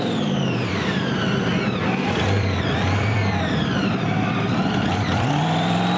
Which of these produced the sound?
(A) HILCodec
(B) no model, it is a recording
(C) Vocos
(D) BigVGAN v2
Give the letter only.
D